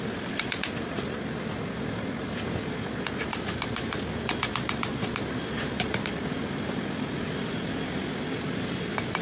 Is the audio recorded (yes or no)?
yes